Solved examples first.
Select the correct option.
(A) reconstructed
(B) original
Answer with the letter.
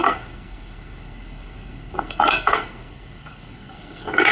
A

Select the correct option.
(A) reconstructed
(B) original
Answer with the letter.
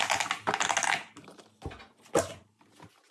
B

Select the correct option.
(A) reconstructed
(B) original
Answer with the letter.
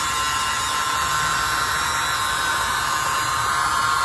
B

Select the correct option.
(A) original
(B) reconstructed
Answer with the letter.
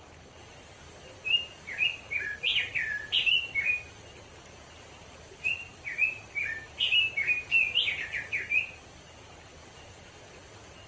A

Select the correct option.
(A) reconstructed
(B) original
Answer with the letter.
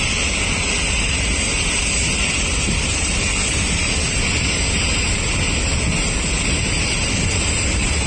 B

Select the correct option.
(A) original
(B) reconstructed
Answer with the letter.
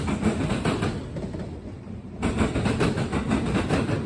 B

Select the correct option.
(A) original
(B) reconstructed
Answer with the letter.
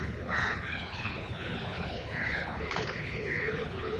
B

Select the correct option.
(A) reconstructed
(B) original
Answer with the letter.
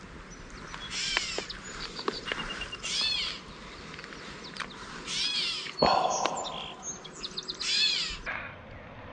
B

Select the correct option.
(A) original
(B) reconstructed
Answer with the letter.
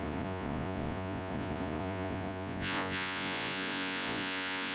B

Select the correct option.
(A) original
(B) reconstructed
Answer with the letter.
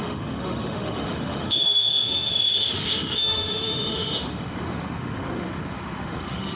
B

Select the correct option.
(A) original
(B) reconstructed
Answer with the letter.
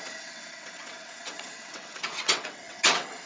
B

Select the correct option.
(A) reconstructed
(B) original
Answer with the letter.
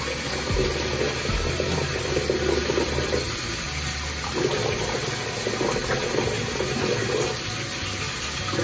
B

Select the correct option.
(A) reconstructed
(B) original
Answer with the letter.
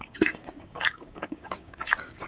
A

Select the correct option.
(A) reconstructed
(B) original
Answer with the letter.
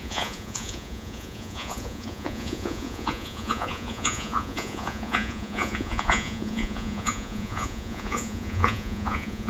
A